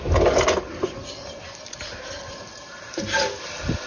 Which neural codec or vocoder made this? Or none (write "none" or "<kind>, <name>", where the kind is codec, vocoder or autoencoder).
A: none